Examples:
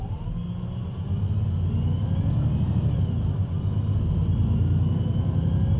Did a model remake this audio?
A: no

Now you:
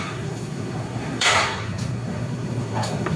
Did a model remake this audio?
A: yes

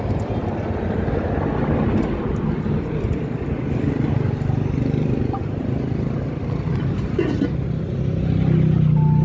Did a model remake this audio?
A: no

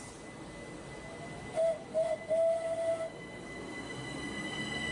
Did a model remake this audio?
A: no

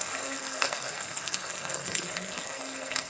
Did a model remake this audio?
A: yes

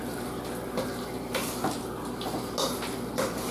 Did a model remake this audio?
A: no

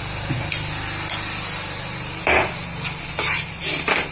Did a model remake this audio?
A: no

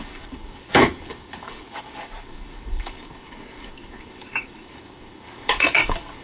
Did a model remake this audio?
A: yes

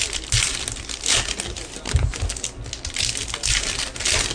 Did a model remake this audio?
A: no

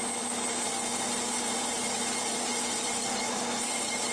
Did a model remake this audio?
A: no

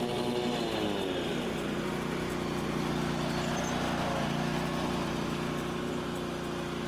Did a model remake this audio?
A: no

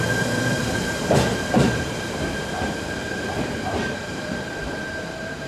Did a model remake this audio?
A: yes